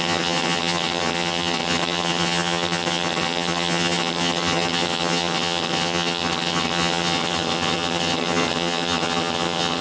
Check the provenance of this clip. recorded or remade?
remade